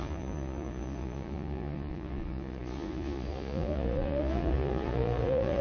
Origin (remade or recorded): remade